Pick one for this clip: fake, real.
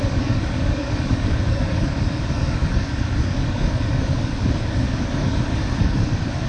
fake